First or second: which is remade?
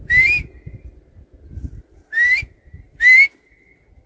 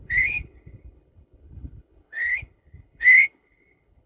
second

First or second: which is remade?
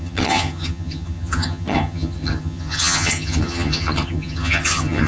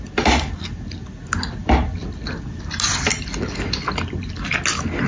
first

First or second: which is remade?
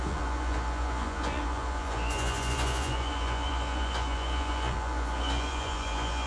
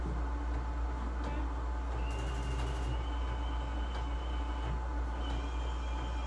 first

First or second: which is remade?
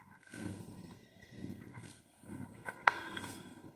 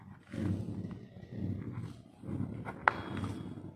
first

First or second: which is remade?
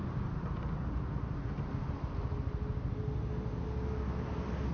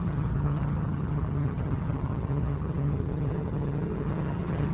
second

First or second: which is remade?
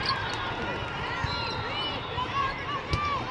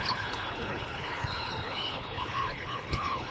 second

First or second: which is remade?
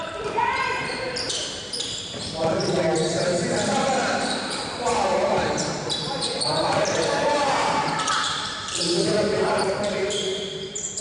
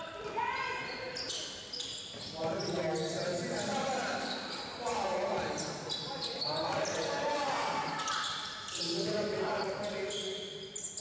first